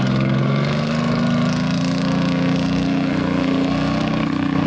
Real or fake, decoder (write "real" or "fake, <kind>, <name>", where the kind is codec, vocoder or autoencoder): fake, codec, SNAC